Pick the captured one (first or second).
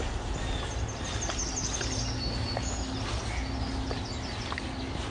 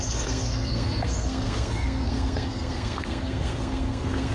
first